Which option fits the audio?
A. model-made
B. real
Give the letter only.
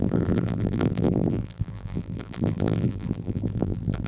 A